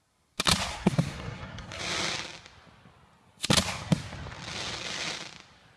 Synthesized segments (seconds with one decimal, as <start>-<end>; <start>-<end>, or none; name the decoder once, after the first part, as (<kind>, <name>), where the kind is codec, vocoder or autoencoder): 0.7-1.8 (codec, SNAC)